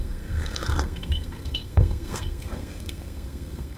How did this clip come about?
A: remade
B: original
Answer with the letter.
A